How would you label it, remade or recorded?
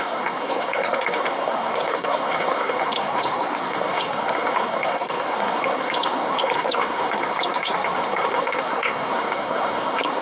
remade